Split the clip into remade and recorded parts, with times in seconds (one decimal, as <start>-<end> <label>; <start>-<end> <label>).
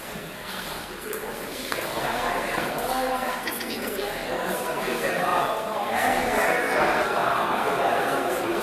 0.0-8.6 remade